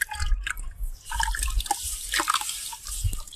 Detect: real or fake real